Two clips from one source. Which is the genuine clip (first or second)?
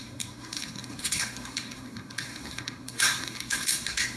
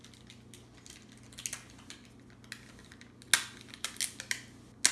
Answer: second